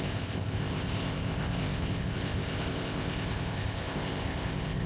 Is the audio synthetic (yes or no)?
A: yes